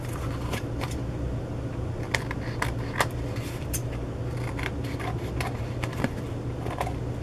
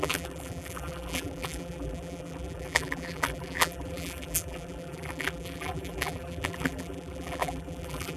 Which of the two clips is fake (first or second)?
second